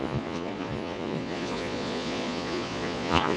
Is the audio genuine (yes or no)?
no